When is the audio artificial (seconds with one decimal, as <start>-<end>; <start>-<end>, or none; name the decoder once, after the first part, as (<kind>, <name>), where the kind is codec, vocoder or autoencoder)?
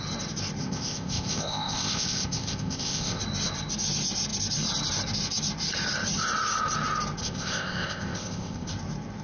0.6-3.2 (codec, ZipCodec); 7.2-8.7